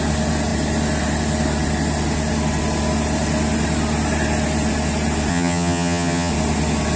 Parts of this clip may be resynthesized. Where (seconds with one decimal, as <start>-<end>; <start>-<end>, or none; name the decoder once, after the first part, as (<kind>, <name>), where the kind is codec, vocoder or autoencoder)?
5.3-6.3 (vocoder, HiFi-GAN)